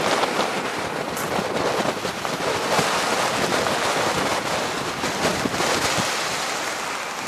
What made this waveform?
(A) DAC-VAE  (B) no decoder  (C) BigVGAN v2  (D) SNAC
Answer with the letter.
B